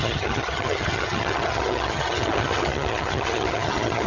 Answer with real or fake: fake